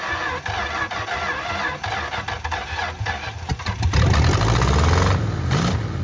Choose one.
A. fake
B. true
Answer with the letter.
B